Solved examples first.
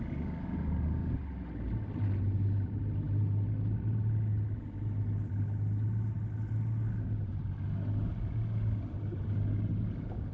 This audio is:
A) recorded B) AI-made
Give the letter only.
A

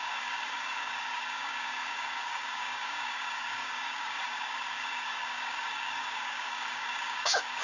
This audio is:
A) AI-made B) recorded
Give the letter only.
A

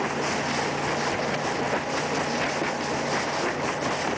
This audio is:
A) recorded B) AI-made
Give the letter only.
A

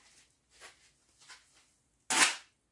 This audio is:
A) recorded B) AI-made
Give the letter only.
A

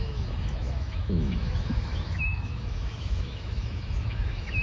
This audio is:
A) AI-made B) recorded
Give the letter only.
A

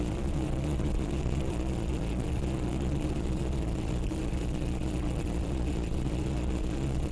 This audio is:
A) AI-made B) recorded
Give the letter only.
A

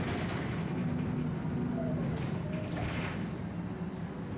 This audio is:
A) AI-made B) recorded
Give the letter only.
B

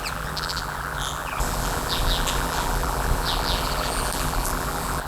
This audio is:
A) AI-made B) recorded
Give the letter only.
A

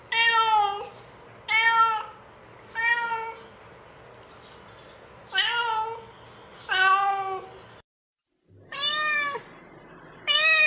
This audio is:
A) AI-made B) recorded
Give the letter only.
B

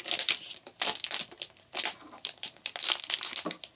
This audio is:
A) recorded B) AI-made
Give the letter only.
A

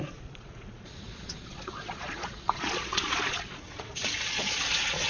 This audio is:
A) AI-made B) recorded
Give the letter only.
A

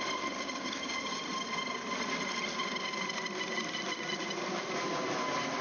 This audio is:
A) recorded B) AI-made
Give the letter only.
A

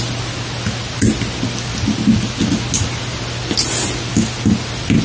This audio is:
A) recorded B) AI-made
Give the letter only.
A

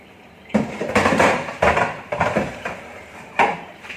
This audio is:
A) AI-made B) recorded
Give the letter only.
A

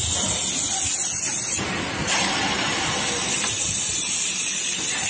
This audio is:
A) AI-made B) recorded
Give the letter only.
B